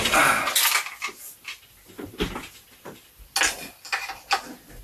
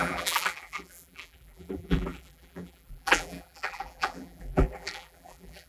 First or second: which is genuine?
first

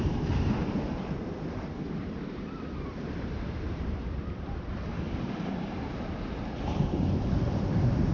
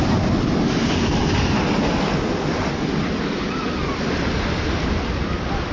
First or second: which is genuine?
second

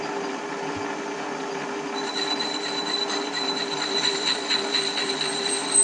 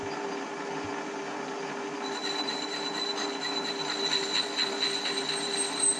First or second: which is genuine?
second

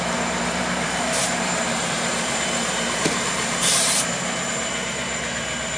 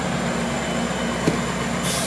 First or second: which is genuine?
second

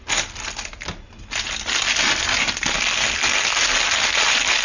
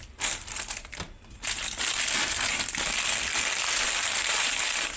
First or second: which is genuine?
first